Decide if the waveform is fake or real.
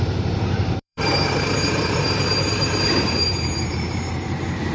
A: fake